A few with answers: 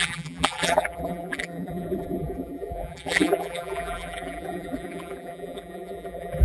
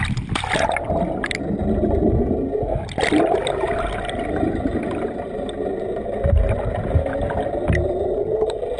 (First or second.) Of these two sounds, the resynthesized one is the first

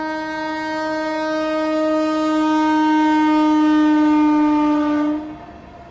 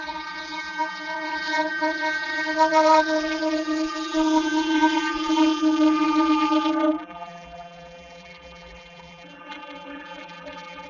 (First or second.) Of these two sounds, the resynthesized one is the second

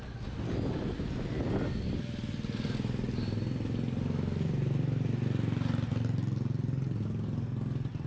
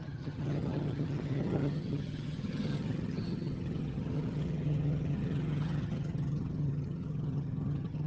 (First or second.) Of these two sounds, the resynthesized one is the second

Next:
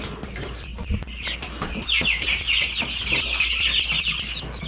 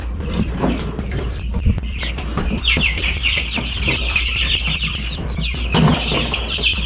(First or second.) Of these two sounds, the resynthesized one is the second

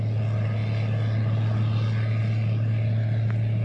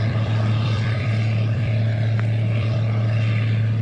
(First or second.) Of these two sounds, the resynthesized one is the second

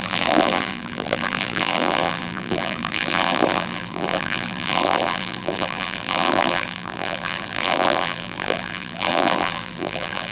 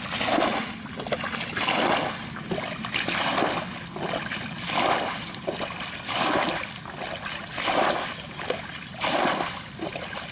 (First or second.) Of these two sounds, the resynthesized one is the first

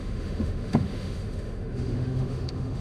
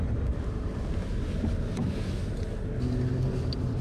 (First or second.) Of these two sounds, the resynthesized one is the first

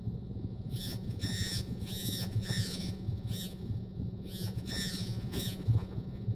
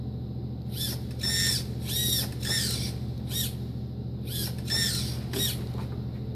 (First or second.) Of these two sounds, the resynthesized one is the first